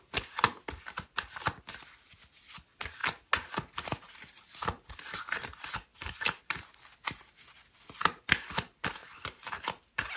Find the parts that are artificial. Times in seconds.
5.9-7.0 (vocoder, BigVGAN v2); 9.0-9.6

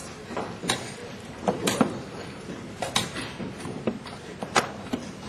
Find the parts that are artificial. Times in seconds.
1.0-4.2 (vocoder, BigVGAN v2)

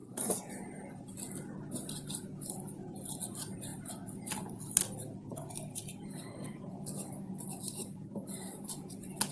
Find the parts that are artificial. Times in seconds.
0.0-0.5 (vocoder, Vocos)

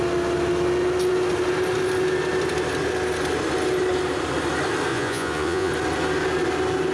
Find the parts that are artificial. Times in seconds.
4.9-5.7 (vocoder, Vocos)

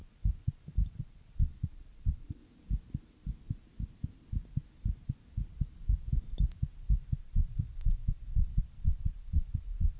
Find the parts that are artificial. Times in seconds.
1.0-2.4 (vocoder, Vocos); 7.2-10.0

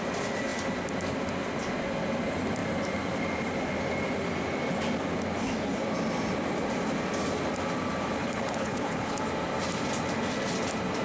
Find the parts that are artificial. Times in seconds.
8.2-9.2 (codec, HILCodec)

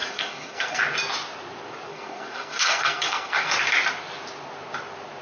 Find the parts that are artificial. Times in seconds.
0.0-0.8 (codec, SNAC); 1.9-3.5